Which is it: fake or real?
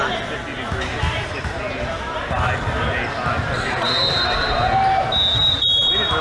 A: real